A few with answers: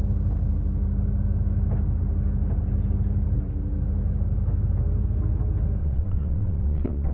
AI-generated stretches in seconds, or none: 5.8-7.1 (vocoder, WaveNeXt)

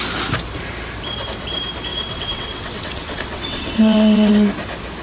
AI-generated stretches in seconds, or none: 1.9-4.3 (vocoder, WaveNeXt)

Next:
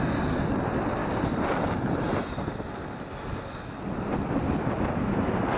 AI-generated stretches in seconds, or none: none